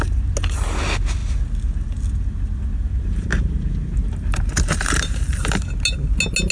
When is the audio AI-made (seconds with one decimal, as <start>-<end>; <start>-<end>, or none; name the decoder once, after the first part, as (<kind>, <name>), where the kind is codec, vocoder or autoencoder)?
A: 4.0-5.5 (vocoder, BigVGAN v2)